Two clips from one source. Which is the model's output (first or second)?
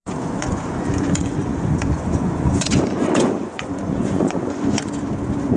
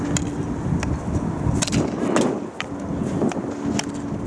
first